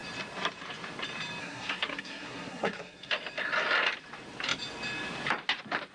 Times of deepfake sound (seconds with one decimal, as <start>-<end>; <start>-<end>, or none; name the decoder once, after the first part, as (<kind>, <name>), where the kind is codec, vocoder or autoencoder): 1.4-3.1 (codec, SNAC)